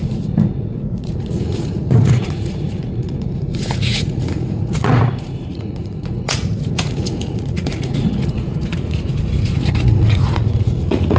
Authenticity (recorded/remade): remade